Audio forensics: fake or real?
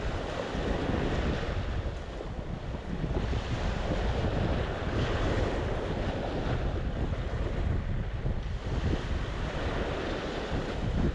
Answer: real